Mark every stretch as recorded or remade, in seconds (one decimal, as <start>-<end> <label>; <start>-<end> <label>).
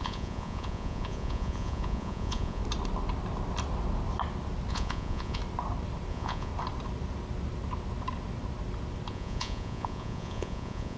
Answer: 0.0-2.6 remade; 2.6-4.7 recorded; 4.7-5.4 remade; 5.4-6.1 recorded; 6.1-6.5 remade; 6.5-9.1 recorded; 9.1-11.0 remade